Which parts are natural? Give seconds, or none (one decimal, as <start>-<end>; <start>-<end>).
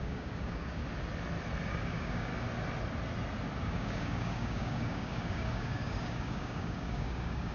0.8-1.7; 2.3-3.6